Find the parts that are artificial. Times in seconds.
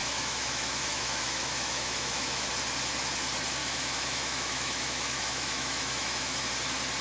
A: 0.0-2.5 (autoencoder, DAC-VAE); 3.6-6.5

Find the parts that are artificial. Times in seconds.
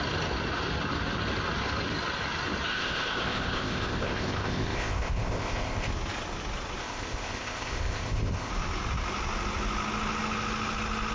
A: 2.7-5.9 (codec, ZipCodec); 6.8-8.5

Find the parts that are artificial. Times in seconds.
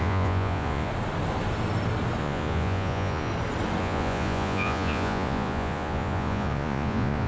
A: 0.0-0.9 (vocoder, Vocos); 2.2-3.3; 3.8-7.3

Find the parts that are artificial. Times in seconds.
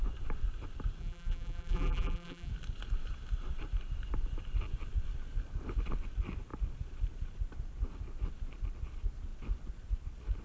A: 1.0-2.5 (vocoder, BigVGAN v2)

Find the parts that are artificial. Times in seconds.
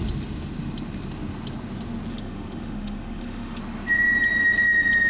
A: 2.1-3.6 (autoencoder, DAC-VAE)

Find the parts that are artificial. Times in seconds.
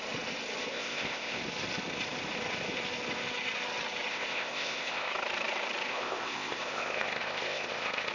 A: 0.7-1.4 (codec, ZipCodec); 4.1-5.1; 5.9-8.1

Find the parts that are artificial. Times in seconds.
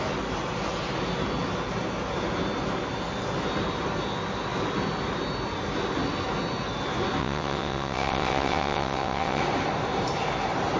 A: 7.2-9.4 (vocoder, WaveNeXt)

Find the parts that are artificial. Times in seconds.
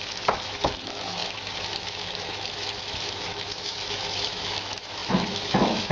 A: 0.0-5.9 (autoencoder, DAC-VAE)